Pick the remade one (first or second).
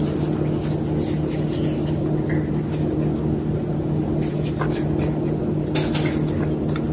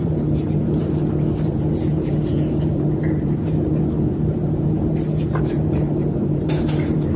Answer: second